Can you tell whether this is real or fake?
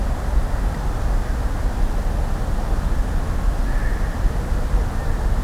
real